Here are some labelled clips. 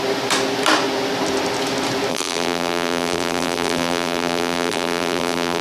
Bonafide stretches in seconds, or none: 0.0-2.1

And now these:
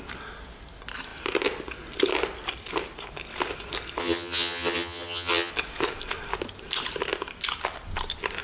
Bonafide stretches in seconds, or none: 0.0-4.0; 5.5-8.4

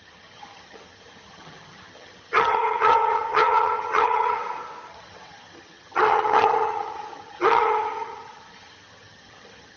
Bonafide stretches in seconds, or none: 4.4-4.9

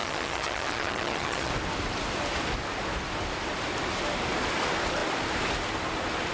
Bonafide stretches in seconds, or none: 1.5-6.3

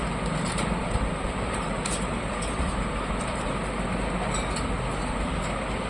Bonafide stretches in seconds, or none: 3.5-5.9